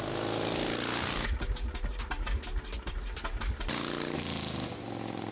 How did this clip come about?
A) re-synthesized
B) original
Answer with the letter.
B